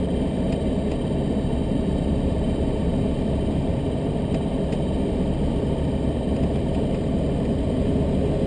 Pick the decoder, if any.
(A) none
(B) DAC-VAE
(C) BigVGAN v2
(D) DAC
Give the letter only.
A